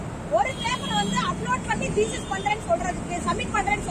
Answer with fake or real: real